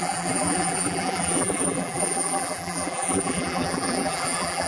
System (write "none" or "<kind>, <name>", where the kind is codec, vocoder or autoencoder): vocoder, BigVGAN v2